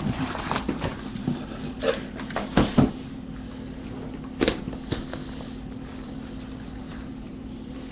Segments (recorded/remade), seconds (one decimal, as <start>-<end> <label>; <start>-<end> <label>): 0.0-5.2 recorded; 5.2-7.9 remade

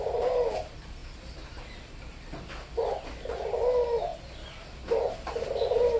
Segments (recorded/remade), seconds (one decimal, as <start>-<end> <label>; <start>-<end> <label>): 0.0-6.0 recorded

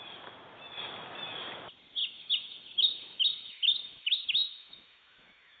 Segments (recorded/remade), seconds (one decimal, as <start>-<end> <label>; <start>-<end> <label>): 0.0-2.0 recorded; 2.0-5.6 remade